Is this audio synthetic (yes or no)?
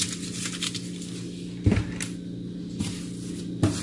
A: no